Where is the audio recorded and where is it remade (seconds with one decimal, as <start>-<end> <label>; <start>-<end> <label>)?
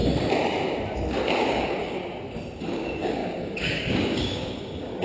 0.0-1.4 recorded; 1.4-2.0 remade; 2.0-2.6 recorded; 2.6-5.0 remade